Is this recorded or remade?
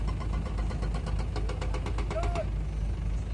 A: recorded